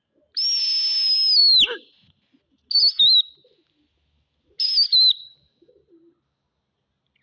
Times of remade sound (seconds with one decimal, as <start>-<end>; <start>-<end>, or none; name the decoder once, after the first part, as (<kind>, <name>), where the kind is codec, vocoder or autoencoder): none